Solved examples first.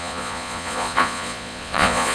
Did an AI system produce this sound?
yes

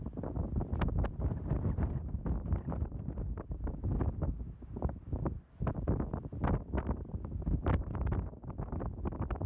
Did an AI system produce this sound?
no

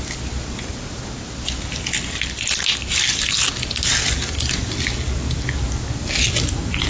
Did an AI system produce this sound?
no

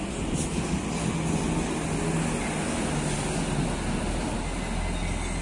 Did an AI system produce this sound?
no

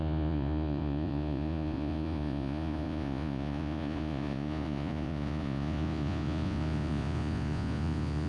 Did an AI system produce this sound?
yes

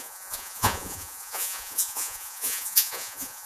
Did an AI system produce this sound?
yes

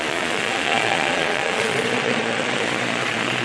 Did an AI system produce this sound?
yes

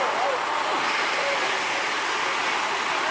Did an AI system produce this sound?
no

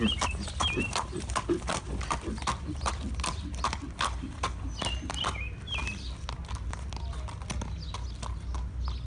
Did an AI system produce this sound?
no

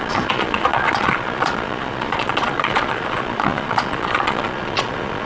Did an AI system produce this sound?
yes